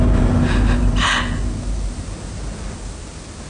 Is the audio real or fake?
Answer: real